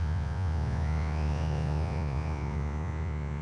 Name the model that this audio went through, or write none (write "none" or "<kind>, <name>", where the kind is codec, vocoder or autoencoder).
vocoder, Vocos